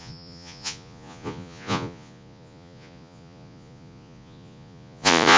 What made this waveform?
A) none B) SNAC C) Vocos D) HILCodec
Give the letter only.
C